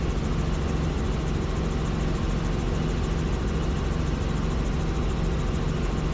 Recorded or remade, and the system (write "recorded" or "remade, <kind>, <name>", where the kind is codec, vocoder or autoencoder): recorded